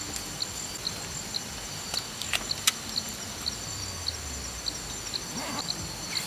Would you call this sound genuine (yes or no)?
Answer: yes